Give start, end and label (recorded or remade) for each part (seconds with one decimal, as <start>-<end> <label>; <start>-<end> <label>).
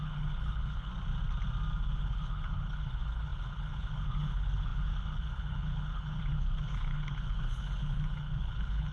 0.0-0.9 remade; 0.9-2.0 recorded; 2.0-8.9 remade